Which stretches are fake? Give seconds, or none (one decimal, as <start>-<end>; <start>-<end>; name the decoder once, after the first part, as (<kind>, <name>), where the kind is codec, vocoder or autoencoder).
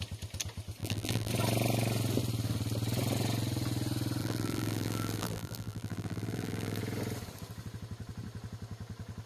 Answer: 0.8-1.3 (vocoder, BigVGAN v2); 4.2-6.8